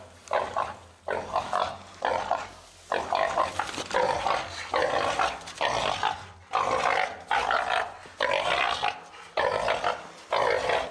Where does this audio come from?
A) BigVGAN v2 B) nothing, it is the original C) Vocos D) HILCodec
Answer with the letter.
B